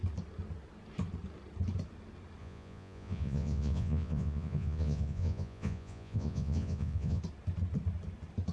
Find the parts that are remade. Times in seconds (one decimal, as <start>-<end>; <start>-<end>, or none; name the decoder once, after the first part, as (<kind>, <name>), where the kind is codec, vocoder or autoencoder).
2.4-7.2 (vocoder, Vocos)